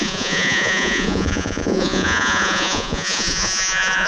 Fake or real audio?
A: fake